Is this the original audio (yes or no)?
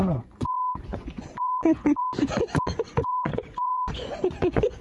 no